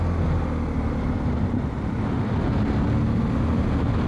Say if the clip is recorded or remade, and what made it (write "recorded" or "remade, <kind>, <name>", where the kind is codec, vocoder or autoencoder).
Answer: recorded